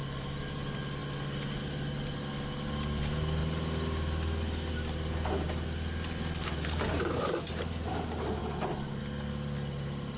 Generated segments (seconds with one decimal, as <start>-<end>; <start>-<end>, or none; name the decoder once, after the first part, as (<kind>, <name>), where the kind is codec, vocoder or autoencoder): 6.4-7.9 (vocoder, BigVGAN v2)